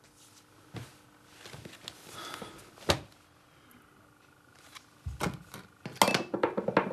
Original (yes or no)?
yes